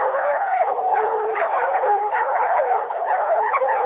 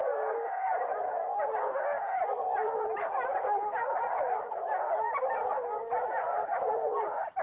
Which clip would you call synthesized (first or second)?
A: first